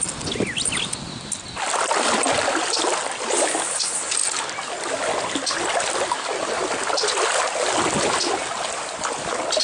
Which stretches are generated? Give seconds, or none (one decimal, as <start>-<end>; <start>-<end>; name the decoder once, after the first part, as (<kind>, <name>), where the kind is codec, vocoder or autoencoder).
none